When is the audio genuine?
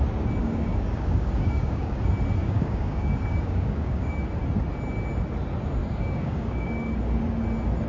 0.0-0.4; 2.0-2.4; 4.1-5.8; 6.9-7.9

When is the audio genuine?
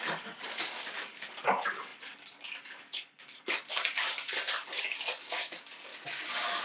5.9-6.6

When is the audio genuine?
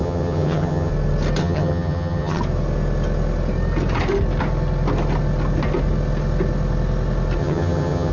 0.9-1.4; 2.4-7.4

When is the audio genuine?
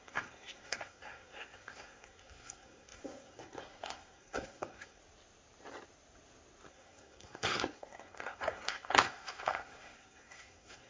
5.0-6.7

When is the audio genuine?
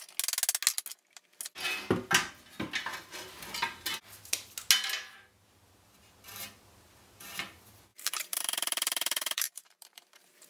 0.0-7.9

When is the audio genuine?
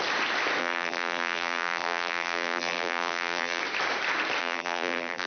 0.0-0.6; 3.6-4.4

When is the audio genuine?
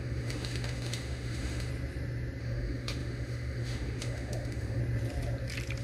1.7-2.4; 4.8-5.8